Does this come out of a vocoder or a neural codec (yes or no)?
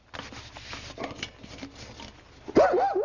no